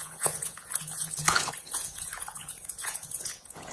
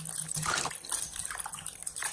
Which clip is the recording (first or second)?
second